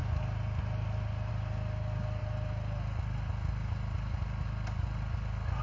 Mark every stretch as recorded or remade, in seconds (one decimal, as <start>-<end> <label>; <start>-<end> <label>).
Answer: 0.0-5.6 recorded